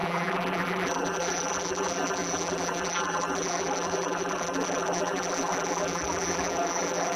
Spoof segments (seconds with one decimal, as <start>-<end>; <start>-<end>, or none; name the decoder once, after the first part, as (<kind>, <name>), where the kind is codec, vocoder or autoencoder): 0.0-7.2 (vocoder, BigVGAN v2)